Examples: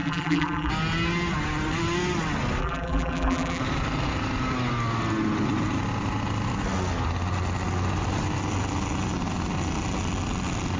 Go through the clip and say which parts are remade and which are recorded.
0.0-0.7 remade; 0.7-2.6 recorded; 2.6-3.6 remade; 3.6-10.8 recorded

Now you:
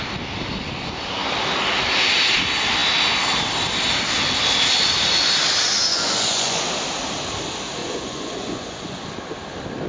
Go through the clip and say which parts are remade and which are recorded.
0.0-5.9 recorded; 5.9-6.6 remade; 6.6-7.8 recorded; 7.8-9.0 remade; 9.0-9.9 recorded

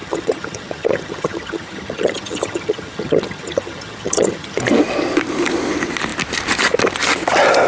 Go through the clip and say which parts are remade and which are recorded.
0.0-4.6 remade; 4.6-7.7 recorded

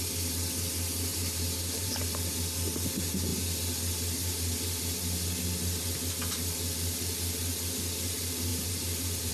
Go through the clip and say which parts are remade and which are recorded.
0.0-1.1 recorded; 1.1-1.9 remade; 1.9-8.5 recorded; 8.5-9.3 remade